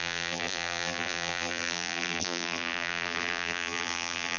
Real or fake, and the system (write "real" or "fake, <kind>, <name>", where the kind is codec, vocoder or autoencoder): fake, vocoder, BigVGAN v2